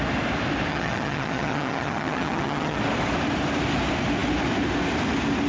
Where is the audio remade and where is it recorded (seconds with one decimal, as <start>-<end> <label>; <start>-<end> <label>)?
0.0-0.7 recorded; 0.7-2.8 remade; 2.8-5.5 recorded